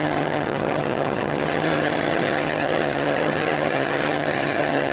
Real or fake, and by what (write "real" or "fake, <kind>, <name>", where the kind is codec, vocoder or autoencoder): fake, vocoder, HiFi-GAN